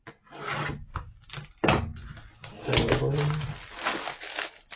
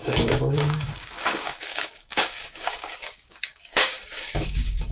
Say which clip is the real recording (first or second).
first